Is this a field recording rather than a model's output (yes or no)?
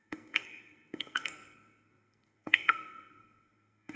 no